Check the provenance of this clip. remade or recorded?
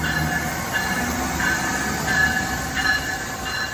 recorded